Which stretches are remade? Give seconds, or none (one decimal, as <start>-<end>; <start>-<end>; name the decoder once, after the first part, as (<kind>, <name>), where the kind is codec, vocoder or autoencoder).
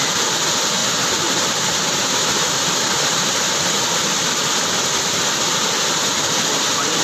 0.8-4.4 (vocoder, BigVGAN v2)